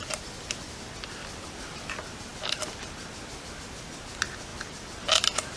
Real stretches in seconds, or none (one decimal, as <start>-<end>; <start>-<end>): 0.0-1.2; 1.9-4.5